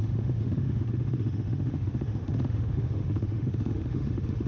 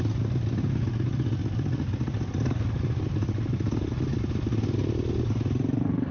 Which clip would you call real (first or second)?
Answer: second